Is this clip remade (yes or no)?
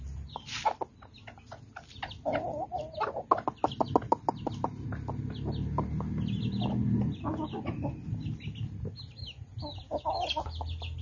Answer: no